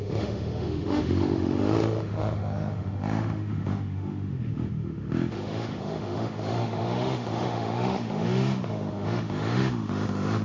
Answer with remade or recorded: remade